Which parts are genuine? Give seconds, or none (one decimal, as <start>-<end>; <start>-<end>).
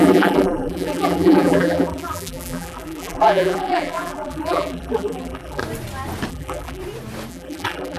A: 5.6-6.3; 6.8-7.3